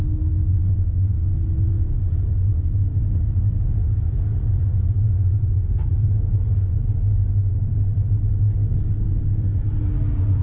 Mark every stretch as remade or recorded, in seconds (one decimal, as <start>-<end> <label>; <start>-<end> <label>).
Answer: 0.0-10.4 recorded